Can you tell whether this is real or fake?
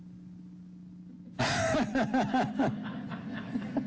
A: real